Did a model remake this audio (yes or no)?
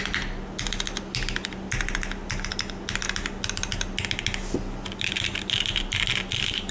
no